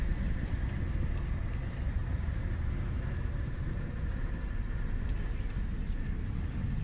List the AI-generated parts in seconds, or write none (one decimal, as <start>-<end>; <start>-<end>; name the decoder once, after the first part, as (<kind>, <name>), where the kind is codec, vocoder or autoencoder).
none